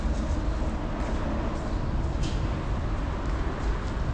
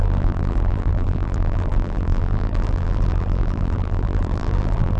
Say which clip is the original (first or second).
first